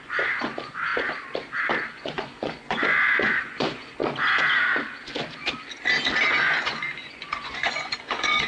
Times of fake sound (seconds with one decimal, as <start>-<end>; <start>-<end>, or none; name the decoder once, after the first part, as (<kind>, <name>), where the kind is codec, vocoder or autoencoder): 0.0-0.9 (vocoder, Vocos); 1.9-4.0; 6.3-8.5